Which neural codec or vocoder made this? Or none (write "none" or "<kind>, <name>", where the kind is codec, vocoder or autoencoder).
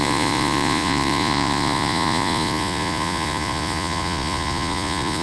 vocoder, Vocos